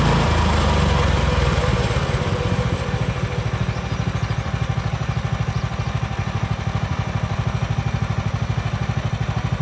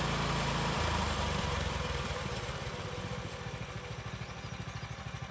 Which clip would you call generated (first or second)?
second